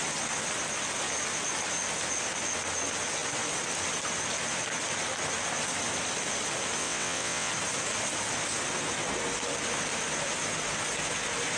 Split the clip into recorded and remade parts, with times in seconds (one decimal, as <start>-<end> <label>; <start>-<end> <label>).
0.0-6.8 recorded; 6.8-7.5 remade; 7.5-11.6 recorded